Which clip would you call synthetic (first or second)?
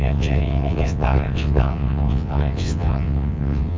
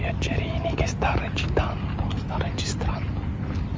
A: first